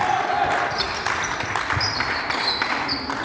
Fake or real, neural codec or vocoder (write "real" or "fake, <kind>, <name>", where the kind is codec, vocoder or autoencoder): real